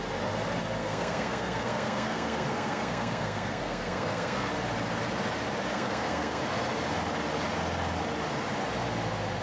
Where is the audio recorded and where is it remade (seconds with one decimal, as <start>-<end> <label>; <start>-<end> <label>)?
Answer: 0.0-0.8 recorded; 0.8-4.5 remade; 4.5-5.7 recorded; 5.7-6.4 remade; 6.4-9.4 recorded